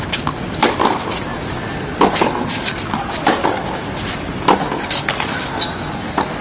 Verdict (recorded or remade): recorded